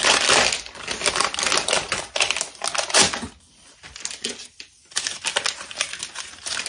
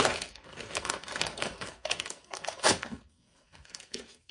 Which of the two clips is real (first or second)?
first